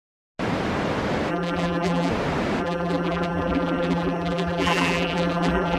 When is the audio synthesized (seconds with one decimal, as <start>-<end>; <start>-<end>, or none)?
1.3-2.1; 2.6-5.8